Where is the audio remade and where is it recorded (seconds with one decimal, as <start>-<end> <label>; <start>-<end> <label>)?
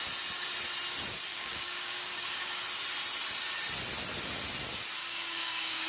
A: 0.0-1.3 recorded; 1.3-2.6 remade; 2.6-5.0 recorded; 5.0-5.9 remade